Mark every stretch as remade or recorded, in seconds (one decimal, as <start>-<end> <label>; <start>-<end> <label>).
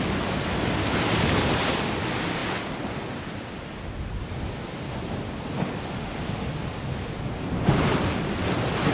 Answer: 0.0-8.9 recorded